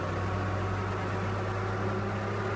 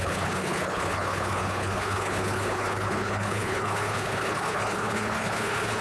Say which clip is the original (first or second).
first